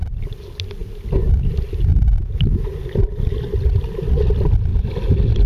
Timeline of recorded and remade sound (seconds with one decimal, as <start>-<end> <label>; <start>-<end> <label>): 0.0-5.5 recorded